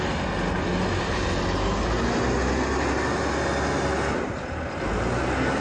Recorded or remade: recorded